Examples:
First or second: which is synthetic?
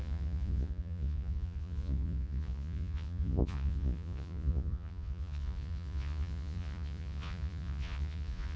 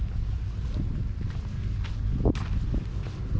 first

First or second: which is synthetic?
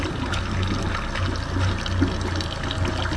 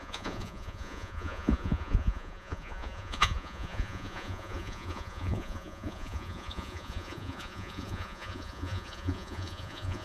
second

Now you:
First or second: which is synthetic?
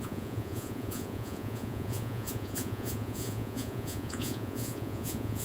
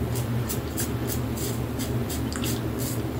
first